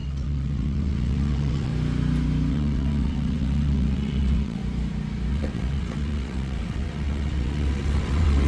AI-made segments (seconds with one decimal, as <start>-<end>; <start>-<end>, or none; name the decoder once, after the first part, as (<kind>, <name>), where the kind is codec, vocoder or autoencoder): 0.0-1.7 (vocoder, WaveNeXt); 2.5-4.6; 5.3-8.5